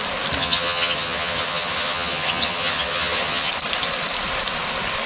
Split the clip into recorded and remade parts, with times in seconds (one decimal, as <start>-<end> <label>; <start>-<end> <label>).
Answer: 0.0-0.4 recorded; 0.4-3.5 remade; 3.5-5.1 recorded